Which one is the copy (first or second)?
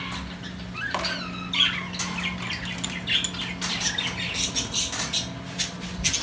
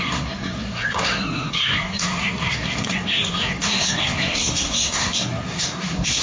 second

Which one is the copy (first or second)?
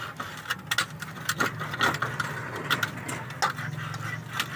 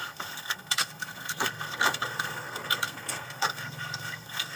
second